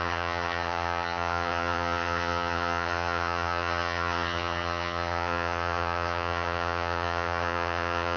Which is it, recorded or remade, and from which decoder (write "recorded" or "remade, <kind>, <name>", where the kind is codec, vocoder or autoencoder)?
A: remade, vocoder, HiFi-GAN